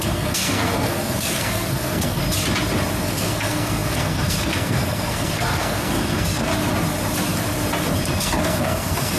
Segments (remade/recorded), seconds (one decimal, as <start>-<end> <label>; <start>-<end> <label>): 0.0-2.2 remade; 2.2-3.0 recorded; 3.0-6.5 remade; 6.5-8.2 recorded; 8.2-9.2 remade